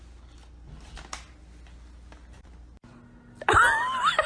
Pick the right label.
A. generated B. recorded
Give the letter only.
B